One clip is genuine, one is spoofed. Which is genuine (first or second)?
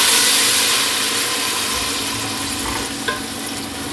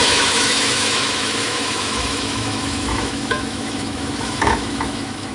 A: first